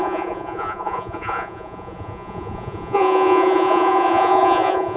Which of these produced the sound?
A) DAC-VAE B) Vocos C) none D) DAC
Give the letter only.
B